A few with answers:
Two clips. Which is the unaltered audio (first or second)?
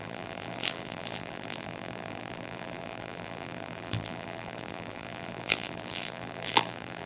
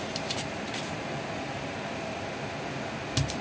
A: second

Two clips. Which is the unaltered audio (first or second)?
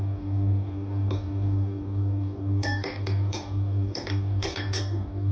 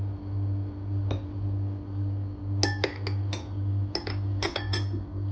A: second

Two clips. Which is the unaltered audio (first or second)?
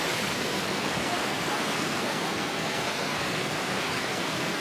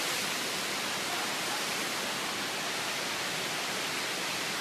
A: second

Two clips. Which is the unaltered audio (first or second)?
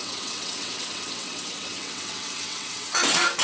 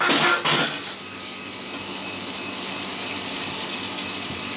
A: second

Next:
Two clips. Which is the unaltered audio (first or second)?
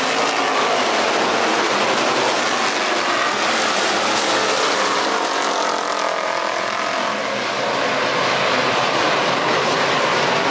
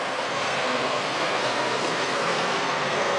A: first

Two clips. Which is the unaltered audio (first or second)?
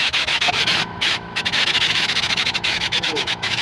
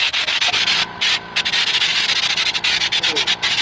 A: second